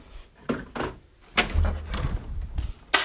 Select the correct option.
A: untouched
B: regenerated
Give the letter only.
A